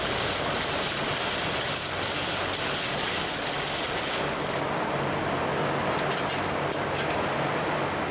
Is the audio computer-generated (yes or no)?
no